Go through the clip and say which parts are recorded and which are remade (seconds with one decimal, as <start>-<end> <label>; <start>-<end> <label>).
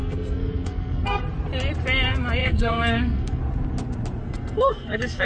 0.0-1.2 remade; 1.2-2.4 recorded; 2.4-3.4 remade; 3.4-4.2 recorded; 4.2-5.3 remade